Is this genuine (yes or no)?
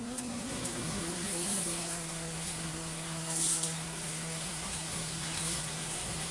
no